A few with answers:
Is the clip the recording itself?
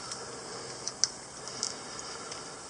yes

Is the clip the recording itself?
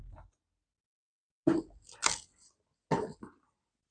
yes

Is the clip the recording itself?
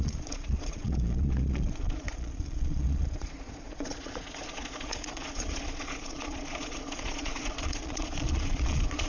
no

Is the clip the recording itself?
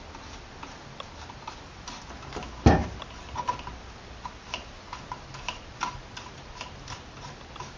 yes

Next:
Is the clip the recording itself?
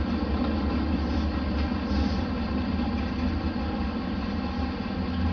yes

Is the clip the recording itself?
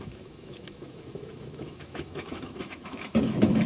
no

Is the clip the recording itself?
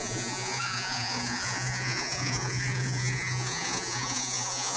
no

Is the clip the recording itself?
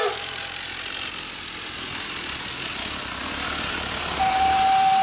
yes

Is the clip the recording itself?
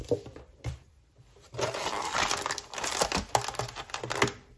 no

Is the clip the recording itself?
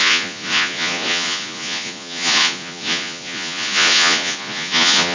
no